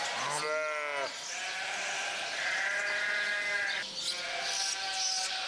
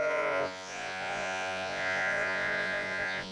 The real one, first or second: first